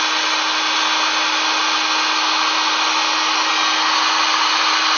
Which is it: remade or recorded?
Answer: recorded